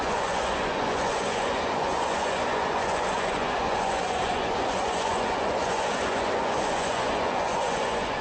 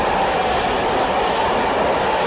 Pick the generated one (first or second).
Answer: first